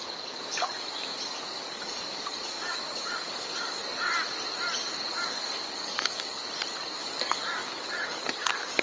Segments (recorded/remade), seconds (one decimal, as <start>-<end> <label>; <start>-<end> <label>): 0.0-3.8 remade; 3.8-5.1 recorded; 5.1-6.4 remade; 6.4-7.0 recorded; 7.0-8.8 remade